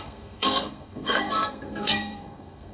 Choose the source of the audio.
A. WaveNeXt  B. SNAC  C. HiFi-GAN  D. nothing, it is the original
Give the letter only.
B